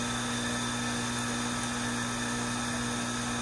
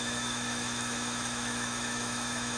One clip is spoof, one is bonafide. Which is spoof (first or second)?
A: second